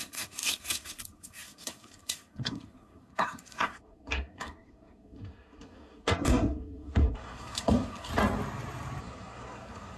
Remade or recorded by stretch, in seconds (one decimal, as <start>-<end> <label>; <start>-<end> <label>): 0.0-8.1 remade; 8.1-9.0 recorded; 9.0-10.0 remade